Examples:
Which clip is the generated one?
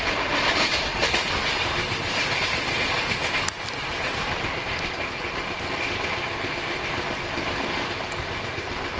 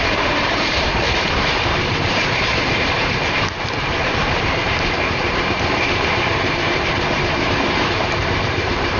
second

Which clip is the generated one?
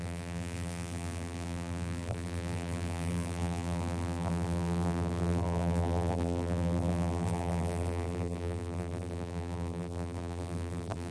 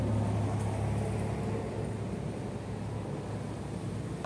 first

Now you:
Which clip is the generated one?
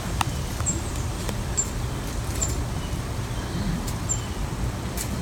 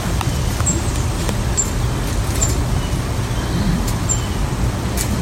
first